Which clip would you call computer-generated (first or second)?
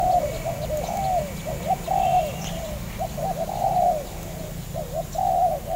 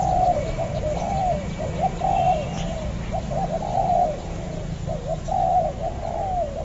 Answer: second